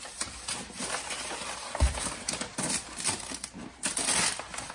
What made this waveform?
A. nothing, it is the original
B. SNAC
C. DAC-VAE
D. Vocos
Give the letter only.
A